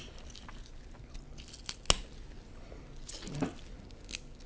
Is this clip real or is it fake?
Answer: real